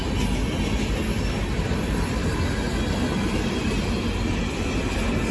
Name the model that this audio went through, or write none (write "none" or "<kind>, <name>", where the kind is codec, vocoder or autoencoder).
none